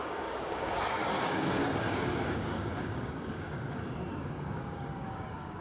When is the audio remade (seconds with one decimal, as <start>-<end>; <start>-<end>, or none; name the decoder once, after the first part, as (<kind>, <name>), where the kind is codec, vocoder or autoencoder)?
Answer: 0.0-5.6 (codec, DAC)